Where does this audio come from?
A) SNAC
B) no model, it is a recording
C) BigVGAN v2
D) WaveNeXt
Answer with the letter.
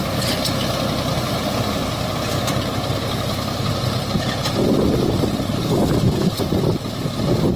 B